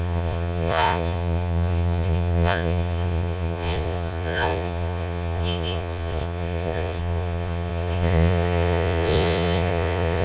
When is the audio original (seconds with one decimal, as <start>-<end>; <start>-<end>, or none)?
none